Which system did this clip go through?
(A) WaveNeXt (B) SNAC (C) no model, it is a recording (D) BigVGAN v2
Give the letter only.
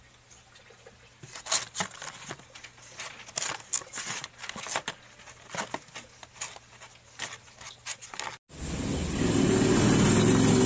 C